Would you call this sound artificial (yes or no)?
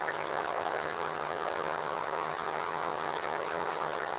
yes